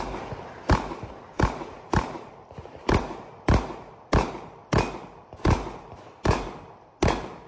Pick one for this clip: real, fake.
real